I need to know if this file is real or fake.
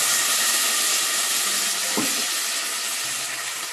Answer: real